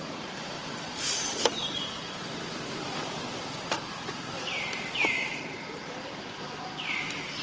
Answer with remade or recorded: remade